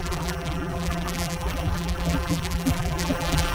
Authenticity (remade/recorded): remade